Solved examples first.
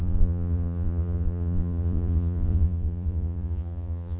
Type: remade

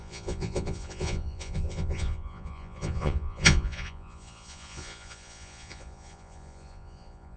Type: remade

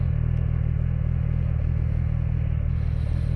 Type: recorded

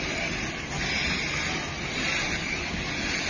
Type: recorded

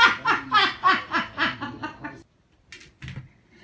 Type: recorded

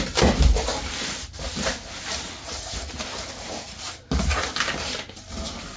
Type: recorded